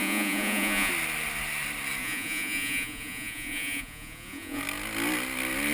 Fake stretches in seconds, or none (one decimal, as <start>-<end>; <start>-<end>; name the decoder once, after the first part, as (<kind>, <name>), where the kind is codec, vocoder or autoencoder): 0.0-0.9 (vocoder, Vocos); 2.0-4.6